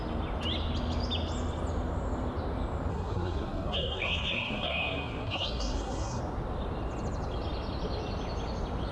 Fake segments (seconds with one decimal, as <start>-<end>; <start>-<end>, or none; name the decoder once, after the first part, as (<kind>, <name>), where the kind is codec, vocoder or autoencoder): 2.9-6.2 (codec, SNAC)